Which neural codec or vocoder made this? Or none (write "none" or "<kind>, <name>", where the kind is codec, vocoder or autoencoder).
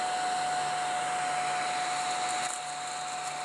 none